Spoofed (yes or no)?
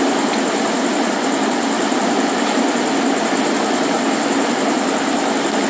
no